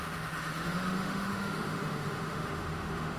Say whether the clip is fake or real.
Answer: fake